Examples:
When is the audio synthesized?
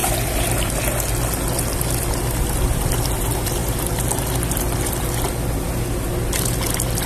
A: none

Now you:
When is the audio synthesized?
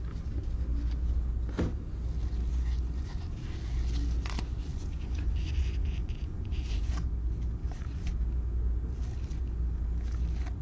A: 2.5-3.3 (vocoder, Vocos); 4.6-6.9; 7.6-8.1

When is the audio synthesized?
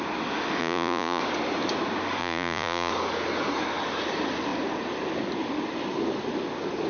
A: 0.6-1.2 (vocoder, Vocos); 2.2-2.9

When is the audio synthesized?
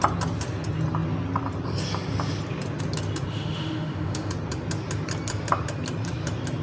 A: 3.3-4.3 (autoencoder, DAC-VAE)